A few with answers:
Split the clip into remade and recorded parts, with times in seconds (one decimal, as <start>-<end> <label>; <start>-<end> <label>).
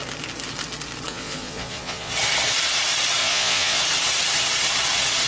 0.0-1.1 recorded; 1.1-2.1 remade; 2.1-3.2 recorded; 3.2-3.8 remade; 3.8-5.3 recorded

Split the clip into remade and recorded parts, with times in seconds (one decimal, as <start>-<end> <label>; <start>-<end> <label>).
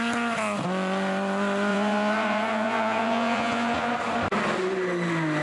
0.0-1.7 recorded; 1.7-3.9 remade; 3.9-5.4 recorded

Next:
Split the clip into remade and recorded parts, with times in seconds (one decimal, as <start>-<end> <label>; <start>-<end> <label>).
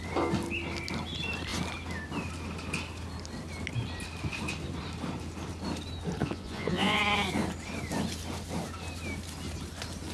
0.0-6.2 recorded; 6.2-7.0 remade; 7.0-10.1 recorded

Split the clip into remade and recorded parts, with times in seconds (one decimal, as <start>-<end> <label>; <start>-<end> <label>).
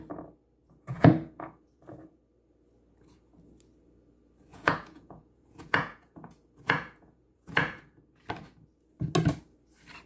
0.0-0.9 recorded; 0.9-2.2 remade; 2.2-4.5 recorded; 4.5-8.0 remade; 8.0-10.1 recorded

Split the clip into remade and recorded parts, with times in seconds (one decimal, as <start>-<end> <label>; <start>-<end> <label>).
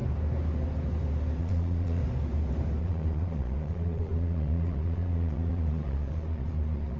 0.0-1.4 recorded; 1.4-2.0 remade; 2.0-2.8 recorded; 2.8-7.0 remade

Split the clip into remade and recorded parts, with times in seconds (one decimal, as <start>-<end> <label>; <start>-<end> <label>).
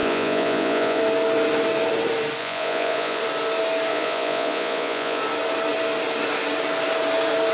0.0-1.0 remade; 1.0-2.4 recorded; 2.4-3.2 remade; 3.2-3.9 recorded; 3.9-5.2 remade; 5.2-7.5 recorded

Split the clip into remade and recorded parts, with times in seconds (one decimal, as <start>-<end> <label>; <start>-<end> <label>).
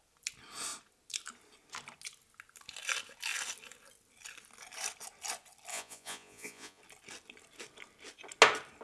0.0-5.7 recorded; 5.7-6.8 remade; 6.8-8.8 recorded